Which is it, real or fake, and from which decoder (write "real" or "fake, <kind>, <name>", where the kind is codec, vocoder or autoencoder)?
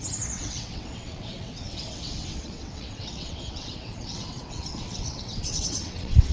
fake, vocoder, WaveNeXt